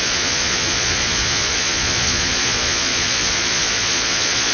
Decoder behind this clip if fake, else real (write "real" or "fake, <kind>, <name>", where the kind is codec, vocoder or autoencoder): fake, vocoder, Vocos